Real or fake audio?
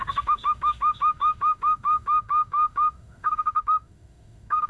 fake